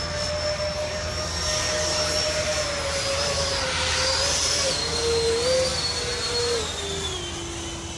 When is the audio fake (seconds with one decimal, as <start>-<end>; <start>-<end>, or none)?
none